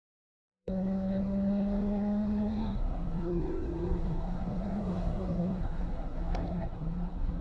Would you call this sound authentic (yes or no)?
no